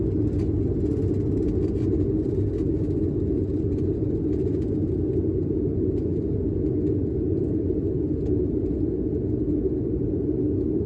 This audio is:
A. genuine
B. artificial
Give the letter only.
A